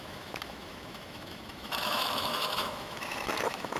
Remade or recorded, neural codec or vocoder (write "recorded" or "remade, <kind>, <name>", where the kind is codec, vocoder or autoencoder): remade, autoencoder, DAC-VAE